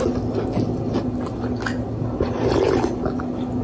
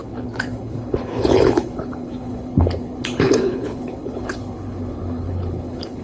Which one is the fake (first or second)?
second